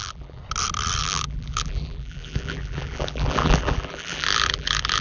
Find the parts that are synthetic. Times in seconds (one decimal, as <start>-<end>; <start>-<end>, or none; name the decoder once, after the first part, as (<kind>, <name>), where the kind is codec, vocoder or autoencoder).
0.0-0.4 (vocoder, BigVGAN v2); 1.0-5.0